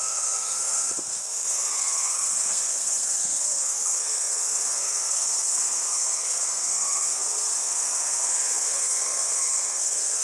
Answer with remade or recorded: remade